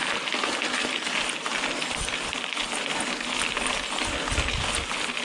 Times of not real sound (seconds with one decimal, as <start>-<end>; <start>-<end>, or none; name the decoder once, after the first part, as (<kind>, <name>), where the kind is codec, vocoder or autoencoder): none